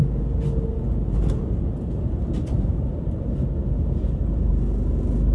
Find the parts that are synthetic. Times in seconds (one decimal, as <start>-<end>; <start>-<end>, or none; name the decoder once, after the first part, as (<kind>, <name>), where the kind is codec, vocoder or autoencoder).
1.4-3.3 (vocoder, BigVGAN v2); 4.0-4.5